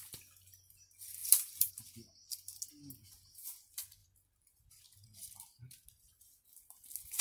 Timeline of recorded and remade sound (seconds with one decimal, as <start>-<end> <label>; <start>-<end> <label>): 0.0-1.2 recorded; 1.2-1.7 remade; 1.7-4.0 recorded; 4.0-6.2 remade; 6.2-7.2 recorded